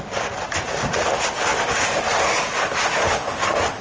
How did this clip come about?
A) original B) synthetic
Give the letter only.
A